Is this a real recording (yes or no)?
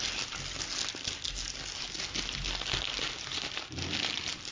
yes